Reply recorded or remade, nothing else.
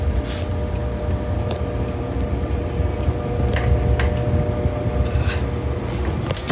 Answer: recorded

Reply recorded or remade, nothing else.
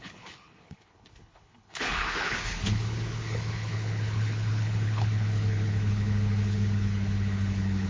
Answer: remade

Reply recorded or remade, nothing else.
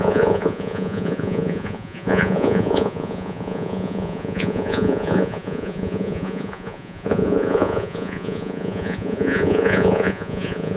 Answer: remade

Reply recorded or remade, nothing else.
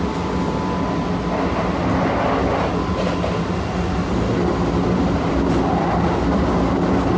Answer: recorded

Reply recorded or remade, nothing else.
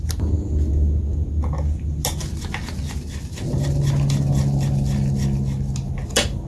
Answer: recorded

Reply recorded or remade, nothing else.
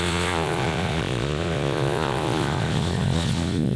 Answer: remade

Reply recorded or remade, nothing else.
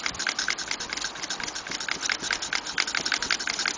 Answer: recorded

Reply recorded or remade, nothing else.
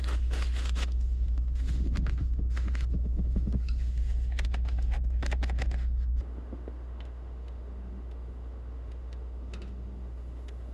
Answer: remade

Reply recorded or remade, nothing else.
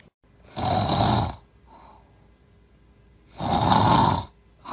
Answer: recorded